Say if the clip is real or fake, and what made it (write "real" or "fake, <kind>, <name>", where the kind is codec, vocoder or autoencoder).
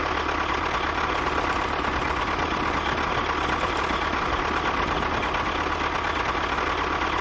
real